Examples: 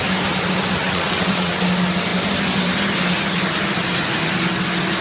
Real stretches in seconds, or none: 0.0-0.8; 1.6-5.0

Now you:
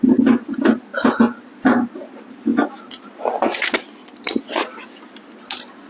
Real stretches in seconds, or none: 0.0-5.9

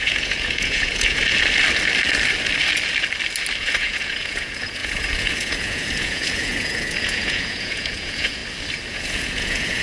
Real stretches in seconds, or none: 1.2-3.6; 8.4-8.9